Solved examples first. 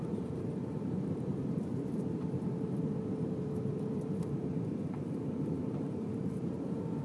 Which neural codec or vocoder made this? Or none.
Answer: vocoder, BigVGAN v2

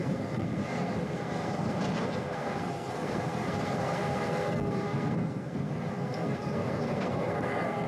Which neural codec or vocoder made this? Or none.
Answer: codec, SNAC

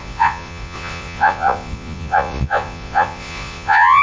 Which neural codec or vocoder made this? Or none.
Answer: vocoder, Vocos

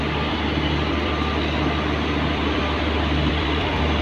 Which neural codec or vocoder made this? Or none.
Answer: vocoder, BigVGAN v2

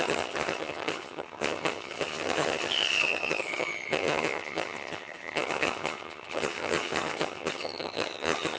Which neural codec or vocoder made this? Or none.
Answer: vocoder, HiFi-GAN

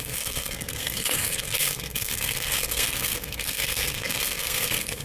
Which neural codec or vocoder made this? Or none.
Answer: codec, SNAC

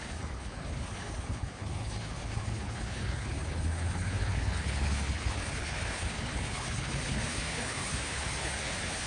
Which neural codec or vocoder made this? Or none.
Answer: codec, HILCodec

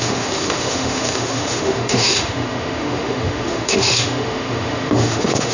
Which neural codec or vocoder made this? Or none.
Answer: autoencoder, DAC-VAE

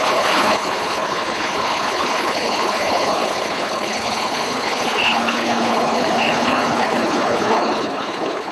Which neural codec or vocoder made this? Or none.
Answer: codec, HILCodec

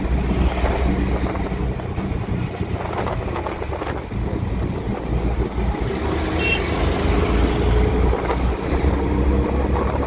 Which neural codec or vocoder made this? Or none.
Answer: none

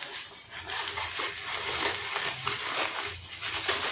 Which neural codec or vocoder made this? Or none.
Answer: none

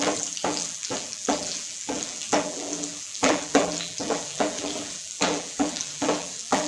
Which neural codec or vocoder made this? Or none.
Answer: vocoder, BigVGAN v2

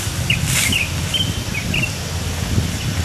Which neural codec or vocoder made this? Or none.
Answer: none